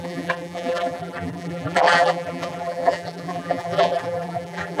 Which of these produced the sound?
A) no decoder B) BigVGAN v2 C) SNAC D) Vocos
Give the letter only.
B